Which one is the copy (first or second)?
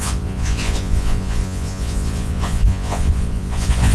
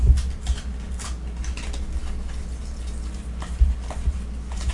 first